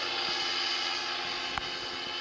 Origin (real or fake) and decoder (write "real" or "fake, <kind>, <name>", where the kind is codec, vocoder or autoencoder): real